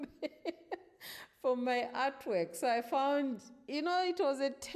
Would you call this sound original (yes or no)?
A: yes